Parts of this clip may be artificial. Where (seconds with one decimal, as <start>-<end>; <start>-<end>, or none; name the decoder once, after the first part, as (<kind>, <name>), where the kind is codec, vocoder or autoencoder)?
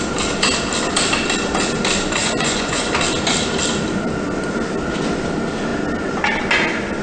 2.2-2.9 (vocoder, Vocos)